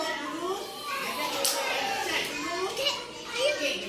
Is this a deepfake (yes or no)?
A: no